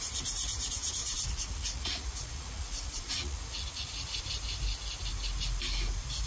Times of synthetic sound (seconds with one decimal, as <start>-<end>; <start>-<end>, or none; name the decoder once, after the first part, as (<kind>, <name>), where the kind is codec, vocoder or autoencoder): 1.0-4.2 (vocoder, Vocos)